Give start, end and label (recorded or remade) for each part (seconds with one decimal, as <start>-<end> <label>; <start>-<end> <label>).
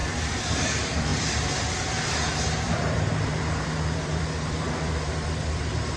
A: 0.0-6.0 remade